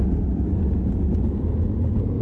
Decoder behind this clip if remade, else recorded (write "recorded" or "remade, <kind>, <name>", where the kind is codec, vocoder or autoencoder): recorded